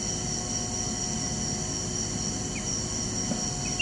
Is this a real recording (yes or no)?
yes